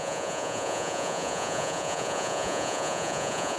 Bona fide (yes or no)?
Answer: no